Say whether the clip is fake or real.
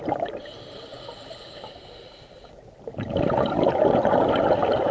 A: real